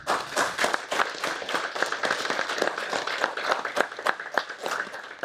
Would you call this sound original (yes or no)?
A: yes